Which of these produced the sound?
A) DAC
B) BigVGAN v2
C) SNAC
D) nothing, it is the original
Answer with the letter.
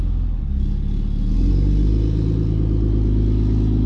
D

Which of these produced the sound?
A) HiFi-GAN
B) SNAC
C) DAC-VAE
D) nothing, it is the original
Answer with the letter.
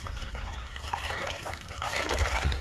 B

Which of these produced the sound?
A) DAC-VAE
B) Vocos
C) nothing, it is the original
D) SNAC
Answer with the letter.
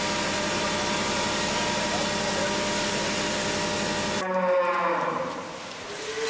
C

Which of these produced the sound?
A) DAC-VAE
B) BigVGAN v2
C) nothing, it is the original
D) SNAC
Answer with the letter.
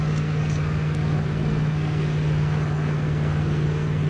D